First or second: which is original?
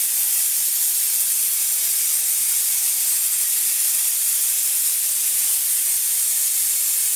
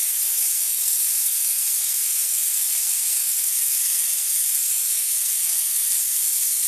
first